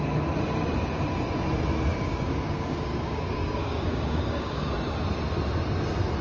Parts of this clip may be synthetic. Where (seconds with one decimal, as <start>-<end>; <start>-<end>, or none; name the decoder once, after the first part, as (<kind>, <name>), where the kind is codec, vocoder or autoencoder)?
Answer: 1.9-4.7 (codec, DAC)